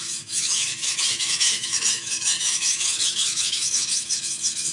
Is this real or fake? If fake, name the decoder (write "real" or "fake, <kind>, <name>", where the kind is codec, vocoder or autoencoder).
fake, autoencoder, DAC-VAE